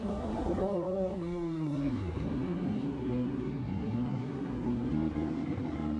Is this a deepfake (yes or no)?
yes